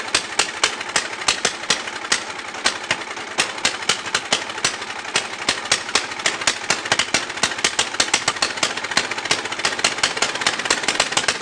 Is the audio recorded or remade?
recorded